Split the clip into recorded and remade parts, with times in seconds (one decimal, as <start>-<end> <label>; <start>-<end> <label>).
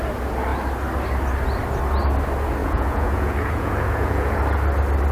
0.0-2.6 recorded; 2.6-4.4 remade; 4.4-5.1 recorded